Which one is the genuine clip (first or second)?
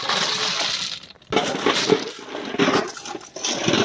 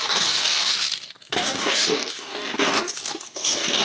first